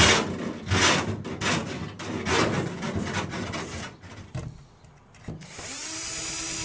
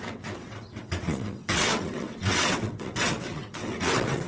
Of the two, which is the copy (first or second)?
second